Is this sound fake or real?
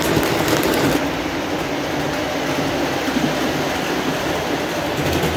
real